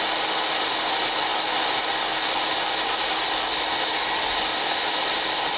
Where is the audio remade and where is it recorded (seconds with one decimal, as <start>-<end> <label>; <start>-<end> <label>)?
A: 0.0-5.6 recorded